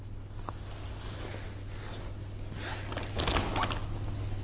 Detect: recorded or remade recorded